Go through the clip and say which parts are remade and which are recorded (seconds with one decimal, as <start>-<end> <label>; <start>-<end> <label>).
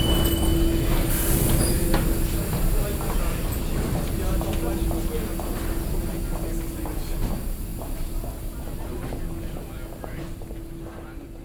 0.0-11.4 recorded